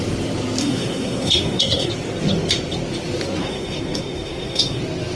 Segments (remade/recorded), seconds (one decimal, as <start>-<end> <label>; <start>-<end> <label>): 0.0-0.6 recorded; 0.6-1.9 remade; 1.9-3.4 recorded; 3.4-4.8 remade; 4.8-5.2 recorded